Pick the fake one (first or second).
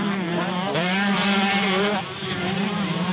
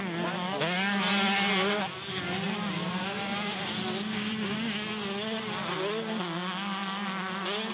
first